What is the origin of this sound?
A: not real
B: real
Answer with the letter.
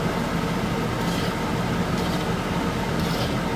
B